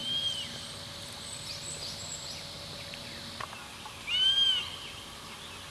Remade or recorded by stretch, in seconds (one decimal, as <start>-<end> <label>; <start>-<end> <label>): 0.0-5.7 recorded